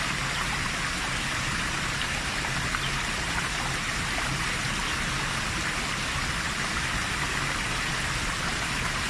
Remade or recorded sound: recorded